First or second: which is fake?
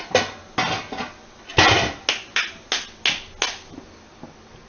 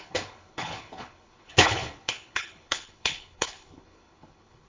second